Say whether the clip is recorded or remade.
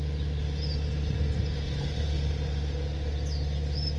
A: recorded